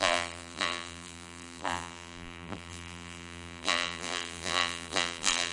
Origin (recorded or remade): remade